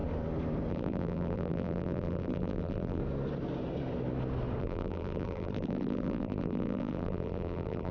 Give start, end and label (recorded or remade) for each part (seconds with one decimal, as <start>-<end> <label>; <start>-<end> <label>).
0.0-0.7 recorded; 0.7-3.0 remade; 3.0-4.6 recorded; 4.6-7.9 remade